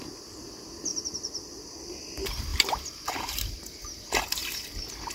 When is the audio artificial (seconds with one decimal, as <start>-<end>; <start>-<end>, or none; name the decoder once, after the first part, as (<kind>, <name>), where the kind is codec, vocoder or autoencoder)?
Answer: 2.5-3.6 (vocoder, BigVGAN v2)